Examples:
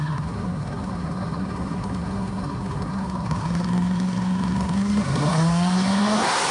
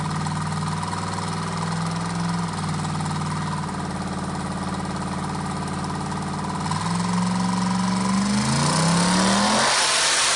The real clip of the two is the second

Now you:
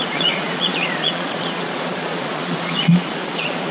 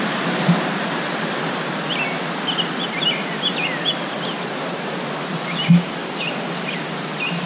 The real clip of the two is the second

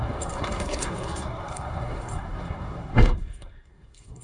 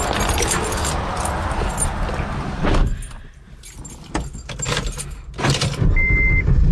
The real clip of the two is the second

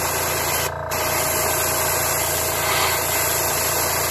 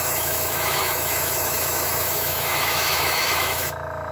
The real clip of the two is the first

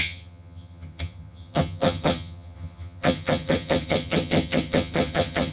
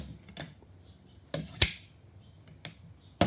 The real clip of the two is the second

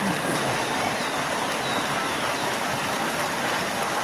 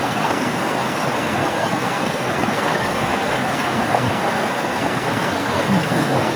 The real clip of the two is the first